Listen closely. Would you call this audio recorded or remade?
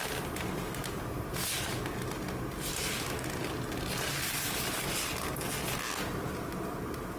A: recorded